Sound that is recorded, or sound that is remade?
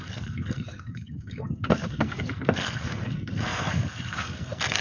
remade